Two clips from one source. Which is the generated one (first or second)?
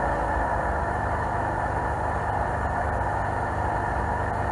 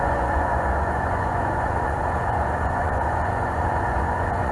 second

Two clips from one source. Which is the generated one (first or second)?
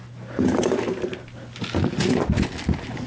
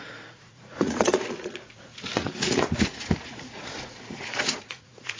second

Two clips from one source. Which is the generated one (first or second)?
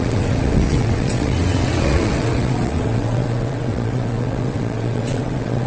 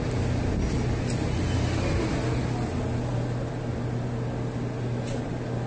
first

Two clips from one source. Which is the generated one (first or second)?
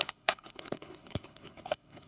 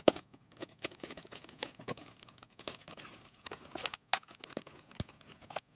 first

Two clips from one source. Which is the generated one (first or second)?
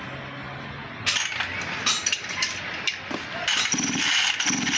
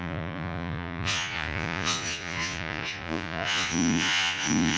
second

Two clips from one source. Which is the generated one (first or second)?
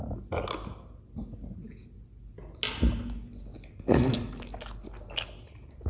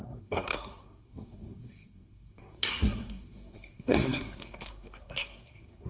second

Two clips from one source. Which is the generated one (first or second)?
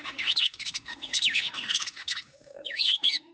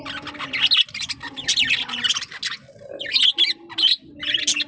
first